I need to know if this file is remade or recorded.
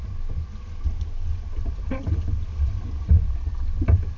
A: recorded